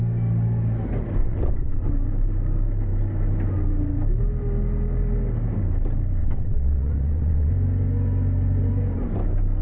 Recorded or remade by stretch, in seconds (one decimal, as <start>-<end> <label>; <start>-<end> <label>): 0.0-1.2 recorded; 1.2-1.9 remade; 1.9-6.2 recorded; 6.2-7.5 remade; 7.5-9.6 recorded